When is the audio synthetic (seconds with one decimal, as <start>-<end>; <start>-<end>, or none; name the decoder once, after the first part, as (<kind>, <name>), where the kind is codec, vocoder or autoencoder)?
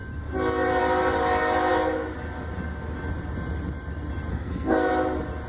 4.3-4.9 (codec, SNAC)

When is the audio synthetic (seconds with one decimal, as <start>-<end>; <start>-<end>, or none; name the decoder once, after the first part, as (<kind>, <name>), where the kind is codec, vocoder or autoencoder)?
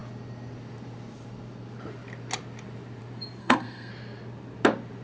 3.4-3.9 (codec, SNAC)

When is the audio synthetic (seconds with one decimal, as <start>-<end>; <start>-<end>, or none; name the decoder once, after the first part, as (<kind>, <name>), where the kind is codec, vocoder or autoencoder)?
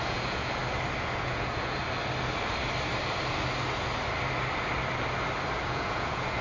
0.0-0.6 (vocoder, Vocos); 1.2-1.8; 5.6-6.4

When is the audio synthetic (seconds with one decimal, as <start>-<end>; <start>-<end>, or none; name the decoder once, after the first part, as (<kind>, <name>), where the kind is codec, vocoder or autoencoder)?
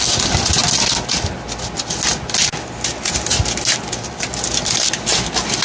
none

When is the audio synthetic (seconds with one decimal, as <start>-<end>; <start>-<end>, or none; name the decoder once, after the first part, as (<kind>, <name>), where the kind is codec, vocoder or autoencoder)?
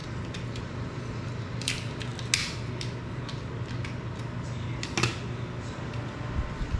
none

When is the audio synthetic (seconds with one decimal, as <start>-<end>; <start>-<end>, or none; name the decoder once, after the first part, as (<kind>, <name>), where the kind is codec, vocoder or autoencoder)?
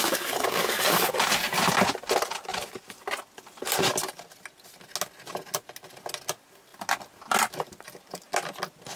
0.0-1.2 (codec, DAC)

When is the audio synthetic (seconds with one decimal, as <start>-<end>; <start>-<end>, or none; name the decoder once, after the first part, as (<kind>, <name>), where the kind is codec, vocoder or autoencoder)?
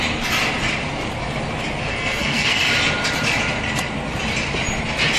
1.9-2.7 (codec, SNAC)